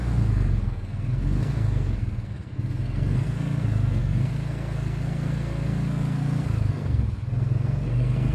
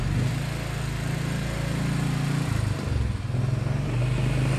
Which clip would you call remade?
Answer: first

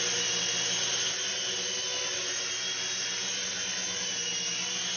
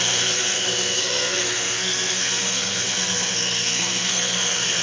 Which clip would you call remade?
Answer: second